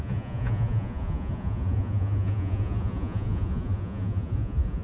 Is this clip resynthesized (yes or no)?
yes